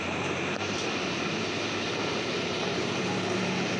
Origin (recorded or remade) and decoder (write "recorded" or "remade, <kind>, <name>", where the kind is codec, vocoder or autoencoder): remade, vocoder, BigVGAN v2